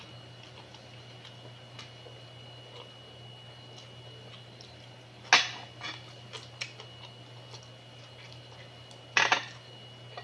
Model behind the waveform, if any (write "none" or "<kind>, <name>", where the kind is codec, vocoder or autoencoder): none